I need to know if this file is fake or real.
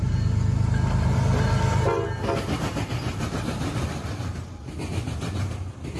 real